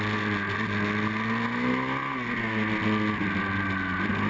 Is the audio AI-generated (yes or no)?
no